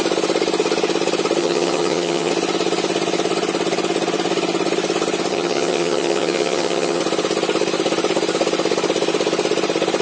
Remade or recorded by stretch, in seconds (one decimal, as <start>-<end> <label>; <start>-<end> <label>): 0.0-1.4 recorded; 1.4-2.3 remade; 2.3-5.3 recorded; 5.3-7.0 remade; 7.0-10.0 recorded